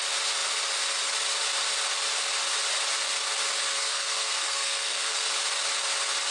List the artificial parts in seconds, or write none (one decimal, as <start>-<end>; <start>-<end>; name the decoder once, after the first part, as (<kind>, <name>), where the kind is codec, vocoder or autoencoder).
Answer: 3.7-5.3 (codec, SNAC)